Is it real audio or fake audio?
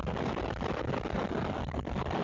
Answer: real